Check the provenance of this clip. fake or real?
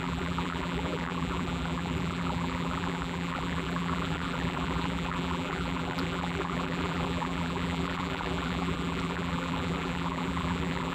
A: fake